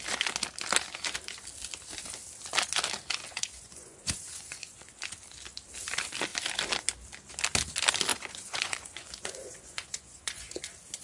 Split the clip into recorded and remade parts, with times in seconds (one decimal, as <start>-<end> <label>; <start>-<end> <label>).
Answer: 0.0-3.3 recorded; 3.3-5.0 remade; 5.0-8.1 recorded; 8.1-10.6 remade; 10.6-11.0 recorded